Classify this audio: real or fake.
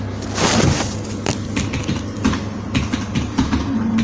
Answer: real